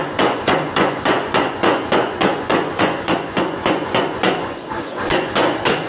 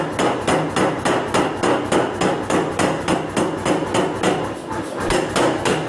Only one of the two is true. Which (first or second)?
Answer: second